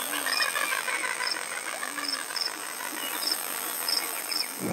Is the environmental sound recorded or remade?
remade